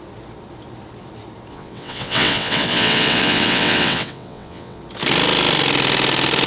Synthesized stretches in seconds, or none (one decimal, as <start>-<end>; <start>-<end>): 1.5-4.8